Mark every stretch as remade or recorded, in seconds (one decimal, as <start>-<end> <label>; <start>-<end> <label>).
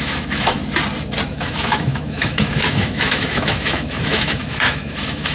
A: 0.0-0.6 remade; 0.6-1.3 recorded; 1.3-5.3 remade